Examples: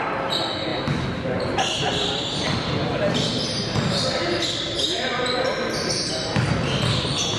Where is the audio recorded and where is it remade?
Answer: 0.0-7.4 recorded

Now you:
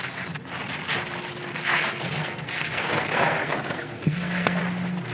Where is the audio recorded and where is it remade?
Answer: 0.0-1.5 recorded; 1.5-4.6 remade; 4.6-5.1 recorded